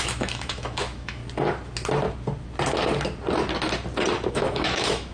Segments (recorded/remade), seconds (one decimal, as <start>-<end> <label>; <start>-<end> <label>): 0.0-1.2 remade; 1.2-4.3 recorded; 4.3-5.1 remade